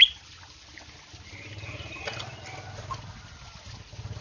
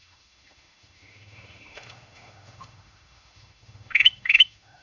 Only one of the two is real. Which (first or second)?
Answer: first